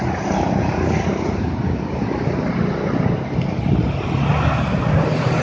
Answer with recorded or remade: recorded